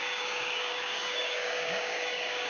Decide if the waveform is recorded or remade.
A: remade